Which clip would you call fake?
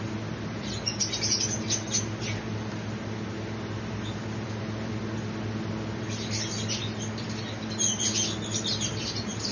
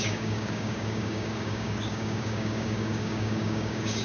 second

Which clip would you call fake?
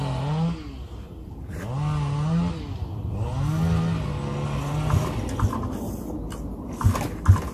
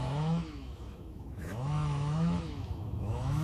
second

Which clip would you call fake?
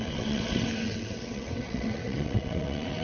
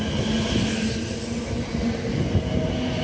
first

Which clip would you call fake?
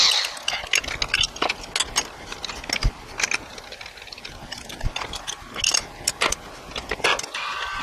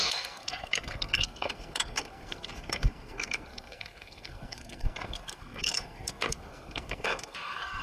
second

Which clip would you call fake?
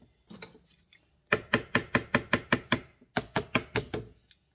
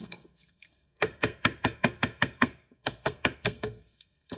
second